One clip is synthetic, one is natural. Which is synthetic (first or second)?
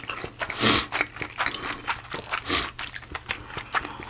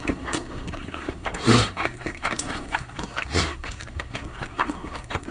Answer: second